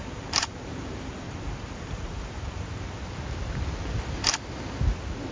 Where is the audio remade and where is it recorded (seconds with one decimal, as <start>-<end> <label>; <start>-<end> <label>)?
0.0-3.2 remade; 3.2-5.3 recorded

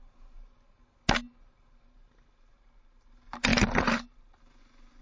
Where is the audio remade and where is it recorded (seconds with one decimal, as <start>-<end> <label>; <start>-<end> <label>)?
0.0-5.0 recorded